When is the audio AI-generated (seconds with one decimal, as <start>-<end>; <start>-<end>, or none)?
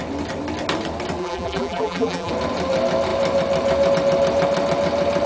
1.2-2.3